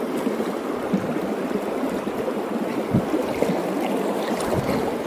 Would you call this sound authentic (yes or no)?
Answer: yes